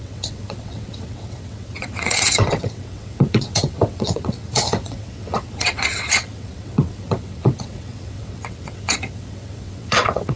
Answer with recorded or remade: remade